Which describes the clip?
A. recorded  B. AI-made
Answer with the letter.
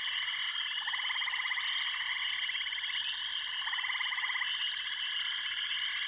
A